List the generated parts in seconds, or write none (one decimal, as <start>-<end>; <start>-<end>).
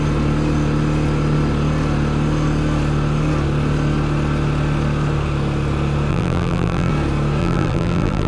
6.1-6.9; 7.4-8.3